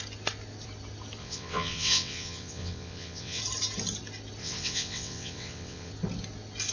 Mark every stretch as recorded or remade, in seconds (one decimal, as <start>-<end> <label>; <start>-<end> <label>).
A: 0.0-1.2 recorded; 1.2-3.4 remade; 3.4-4.4 recorded; 4.4-5.9 remade; 5.9-6.7 recorded